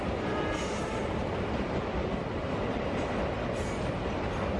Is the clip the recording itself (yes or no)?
yes